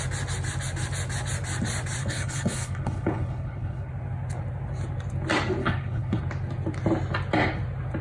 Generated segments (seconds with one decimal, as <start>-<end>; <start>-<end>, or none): 2.0-3.9; 5.6-6.2